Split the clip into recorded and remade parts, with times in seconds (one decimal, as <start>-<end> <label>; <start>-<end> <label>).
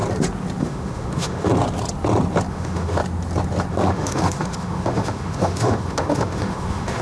0.0-0.6 recorded; 0.6-1.5 remade; 1.5-2.5 recorded; 2.5-3.0 remade; 3.0-3.7 recorded; 3.7-7.0 remade